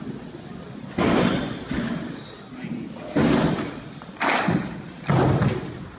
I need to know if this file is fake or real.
real